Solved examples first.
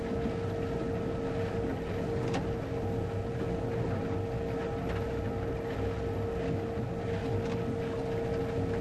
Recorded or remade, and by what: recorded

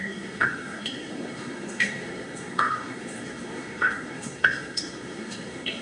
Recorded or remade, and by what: remade, codec, SNAC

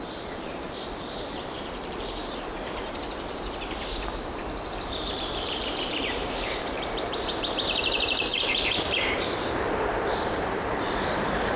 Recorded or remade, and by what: remade, vocoder, BigVGAN v2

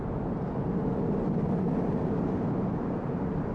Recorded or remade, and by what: recorded